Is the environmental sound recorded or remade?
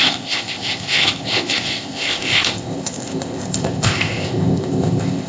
remade